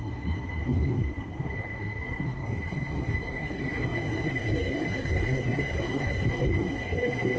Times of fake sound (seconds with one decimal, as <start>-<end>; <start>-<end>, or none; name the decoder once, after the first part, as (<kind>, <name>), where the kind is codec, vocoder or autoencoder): 0.0-7.4 (codec, SNAC)